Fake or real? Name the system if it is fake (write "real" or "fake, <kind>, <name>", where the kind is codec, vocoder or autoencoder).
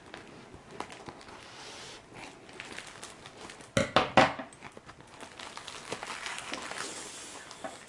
real